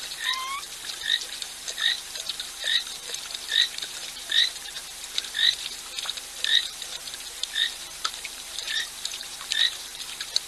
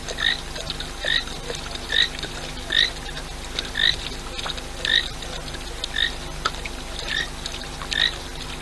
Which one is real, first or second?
second